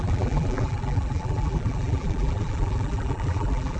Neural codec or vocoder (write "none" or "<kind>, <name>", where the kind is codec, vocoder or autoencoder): vocoder, BigVGAN v2